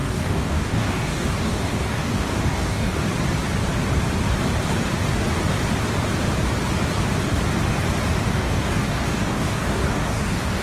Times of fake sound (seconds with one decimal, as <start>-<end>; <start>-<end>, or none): 0.0-3.0; 8.3-10.6